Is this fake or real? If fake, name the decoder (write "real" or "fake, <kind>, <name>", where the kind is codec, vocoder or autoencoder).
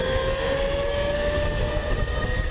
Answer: fake, codec, SNAC